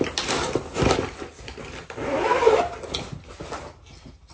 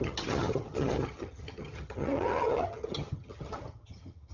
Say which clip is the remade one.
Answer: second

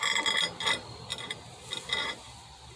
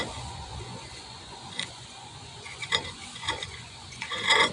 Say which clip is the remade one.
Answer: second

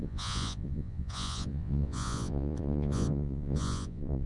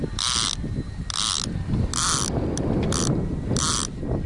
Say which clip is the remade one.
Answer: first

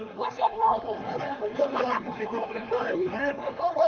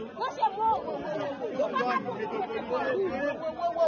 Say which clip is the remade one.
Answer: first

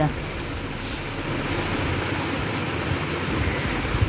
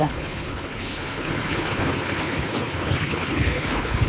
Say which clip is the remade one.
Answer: second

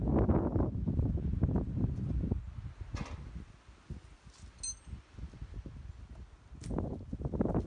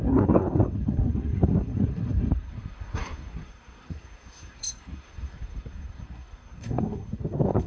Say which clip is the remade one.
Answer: second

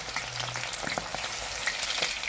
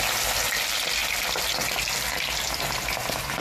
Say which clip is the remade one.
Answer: first